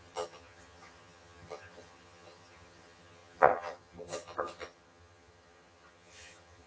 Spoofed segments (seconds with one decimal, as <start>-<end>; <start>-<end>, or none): 0.0-6.7